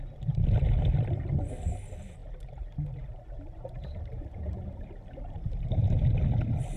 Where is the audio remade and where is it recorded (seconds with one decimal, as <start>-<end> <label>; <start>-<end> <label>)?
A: 0.0-2.2 recorded; 2.2-5.6 remade; 5.6-6.8 recorded